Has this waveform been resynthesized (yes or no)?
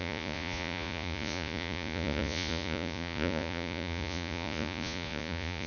yes